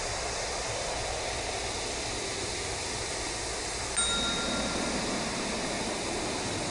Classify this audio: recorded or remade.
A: recorded